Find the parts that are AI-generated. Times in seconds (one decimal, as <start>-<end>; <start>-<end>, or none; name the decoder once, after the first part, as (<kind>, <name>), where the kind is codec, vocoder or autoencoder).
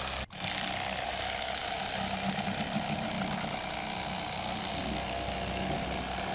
none